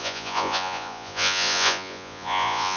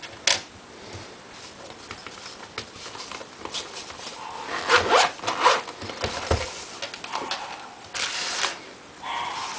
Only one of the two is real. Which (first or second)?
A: second